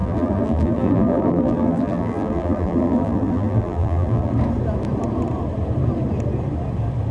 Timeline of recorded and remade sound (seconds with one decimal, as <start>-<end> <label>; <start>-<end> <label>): 0.0-4.3 remade; 4.3-7.1 recorded